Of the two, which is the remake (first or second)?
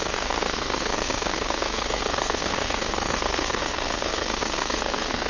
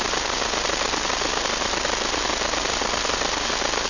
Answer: first